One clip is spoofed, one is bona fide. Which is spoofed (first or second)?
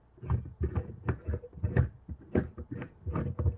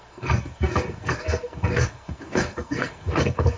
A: second